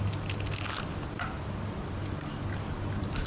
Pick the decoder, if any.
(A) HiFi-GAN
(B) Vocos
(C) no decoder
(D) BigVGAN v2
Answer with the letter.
C